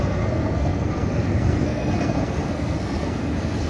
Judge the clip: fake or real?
fake